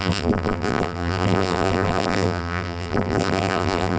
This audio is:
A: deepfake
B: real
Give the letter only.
A